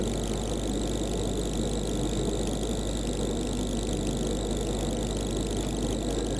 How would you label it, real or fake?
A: real